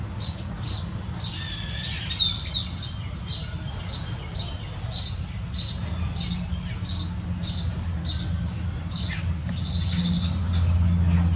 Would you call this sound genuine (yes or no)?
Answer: yes